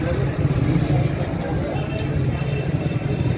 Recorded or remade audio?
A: recorded